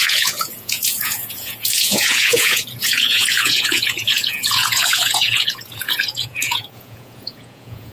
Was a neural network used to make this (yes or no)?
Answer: yes